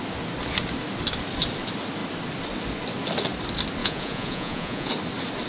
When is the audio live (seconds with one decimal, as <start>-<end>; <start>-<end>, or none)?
0.0-3.8; 4.9-5.5